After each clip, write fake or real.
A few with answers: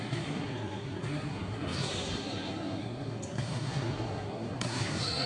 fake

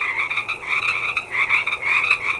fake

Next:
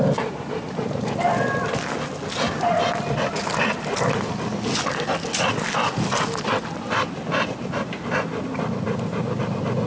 real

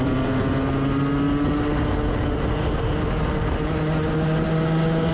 real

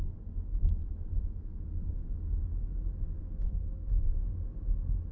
real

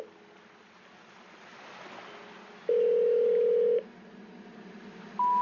real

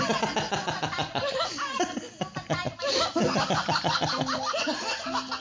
real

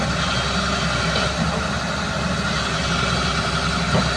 real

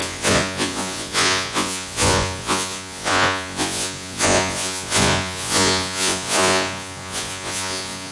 fake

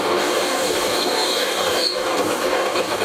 fake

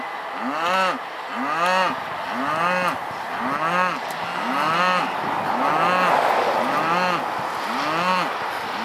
real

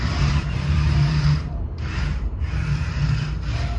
fake